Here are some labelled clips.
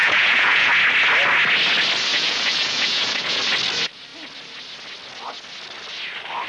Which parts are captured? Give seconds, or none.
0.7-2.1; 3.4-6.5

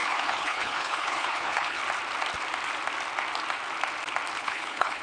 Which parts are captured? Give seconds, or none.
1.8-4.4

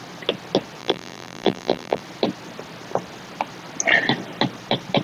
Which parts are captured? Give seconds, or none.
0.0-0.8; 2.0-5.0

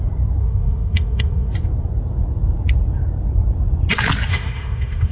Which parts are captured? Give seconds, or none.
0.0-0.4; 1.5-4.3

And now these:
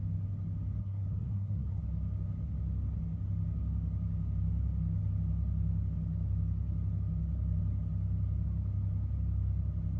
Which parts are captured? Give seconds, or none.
0.0-0.8; 1.8-10.0